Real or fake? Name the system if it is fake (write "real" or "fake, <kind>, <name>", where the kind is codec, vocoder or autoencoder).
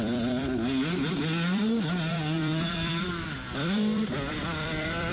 fake, vocoder, BigVGAN v2